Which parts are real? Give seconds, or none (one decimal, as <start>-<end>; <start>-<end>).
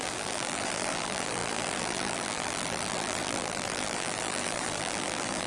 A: none